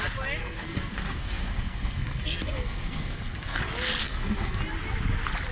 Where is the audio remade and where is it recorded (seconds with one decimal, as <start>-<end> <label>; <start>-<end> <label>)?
0.0-0.4 recorded; 0.4-3.6 remade; 3.6-4.0 recorded; 4.0-4.6 remade; 4.6-5.5 recorded